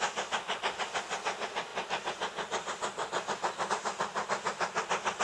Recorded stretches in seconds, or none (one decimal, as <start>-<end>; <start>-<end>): 0.0-5.2

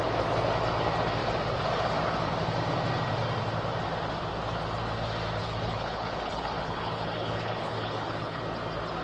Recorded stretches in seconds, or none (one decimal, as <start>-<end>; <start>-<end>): 0.0-5.4; 8.4-9.0

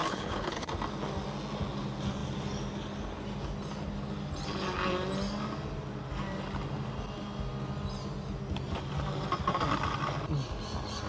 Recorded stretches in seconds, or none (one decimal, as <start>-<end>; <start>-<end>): 0.7-11.1

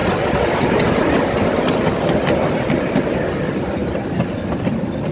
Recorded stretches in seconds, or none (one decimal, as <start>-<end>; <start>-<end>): 0.0-5.1

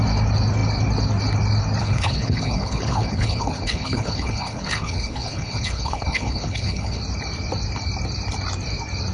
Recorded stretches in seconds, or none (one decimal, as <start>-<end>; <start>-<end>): 0.0-1.8; 7.0-9.1

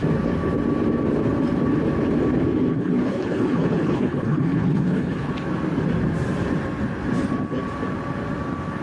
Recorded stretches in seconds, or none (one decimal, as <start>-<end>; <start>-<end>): 0.0-2.7; 5.3-8.8

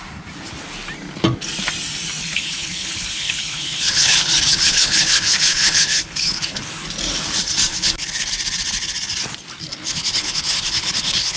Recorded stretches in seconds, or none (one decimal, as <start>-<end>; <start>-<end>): 0.0-2.2; 6.7-7.7; 8.3-9.8